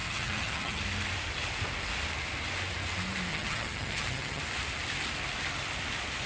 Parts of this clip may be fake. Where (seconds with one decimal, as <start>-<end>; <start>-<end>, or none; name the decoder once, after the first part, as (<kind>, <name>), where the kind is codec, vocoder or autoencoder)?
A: 0.0-0.8 (vocoder, HiFi-GAN); 3.3-4.4